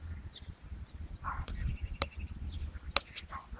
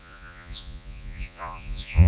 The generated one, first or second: second